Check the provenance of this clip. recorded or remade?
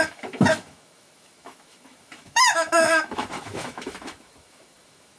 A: remade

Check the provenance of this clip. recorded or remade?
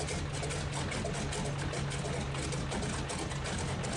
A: recorded